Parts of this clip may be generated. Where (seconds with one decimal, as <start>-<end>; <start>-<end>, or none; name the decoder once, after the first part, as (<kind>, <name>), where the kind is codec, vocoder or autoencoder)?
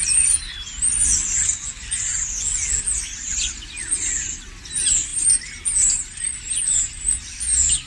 none